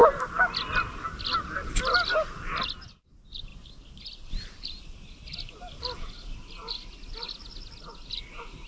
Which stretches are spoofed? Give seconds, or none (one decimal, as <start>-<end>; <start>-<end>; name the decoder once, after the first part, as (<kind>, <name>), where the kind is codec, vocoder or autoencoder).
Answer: none

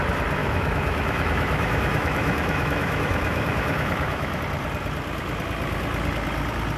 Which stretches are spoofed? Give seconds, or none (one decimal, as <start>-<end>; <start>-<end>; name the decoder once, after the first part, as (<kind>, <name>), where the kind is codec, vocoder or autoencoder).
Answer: 0.4-4.4 (autoencoder, DAC-VAE)

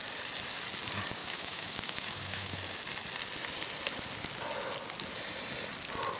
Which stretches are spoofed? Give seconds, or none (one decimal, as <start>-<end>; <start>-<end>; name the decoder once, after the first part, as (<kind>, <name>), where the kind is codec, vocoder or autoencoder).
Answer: 1.2-2.6 (autoencoder, DAC-VAE)